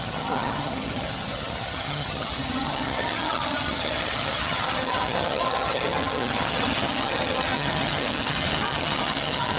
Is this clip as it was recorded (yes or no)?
no